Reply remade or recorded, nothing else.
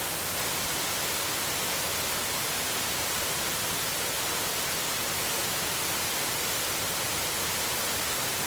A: recorded